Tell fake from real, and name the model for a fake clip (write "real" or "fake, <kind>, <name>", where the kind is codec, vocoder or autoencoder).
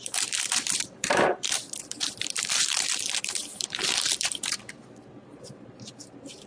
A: fake, vocoder, BigVGAN v2